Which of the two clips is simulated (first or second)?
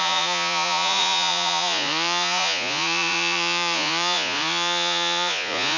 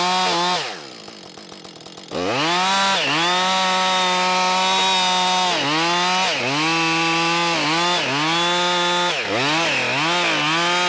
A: first